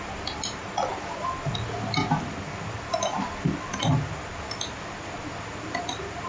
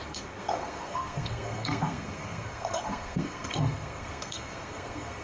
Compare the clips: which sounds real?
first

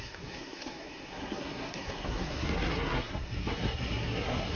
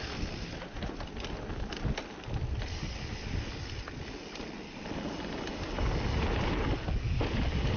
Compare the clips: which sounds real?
second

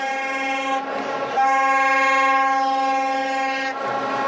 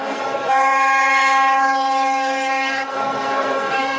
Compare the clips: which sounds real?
first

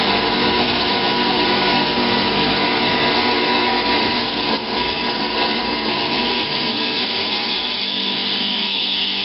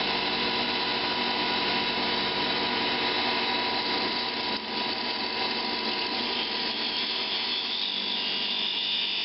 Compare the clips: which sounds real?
second